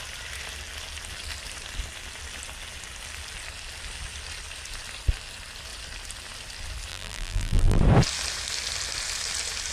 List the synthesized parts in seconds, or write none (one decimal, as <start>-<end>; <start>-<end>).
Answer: 6.9-7.8